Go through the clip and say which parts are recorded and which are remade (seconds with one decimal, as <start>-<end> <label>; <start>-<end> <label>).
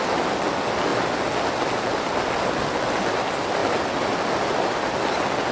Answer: 0.0-5.5 recorded